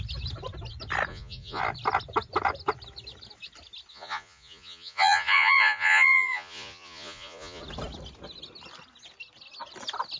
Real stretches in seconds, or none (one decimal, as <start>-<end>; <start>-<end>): 0.0-1.1; 1.6-3.9; 7.6-10.2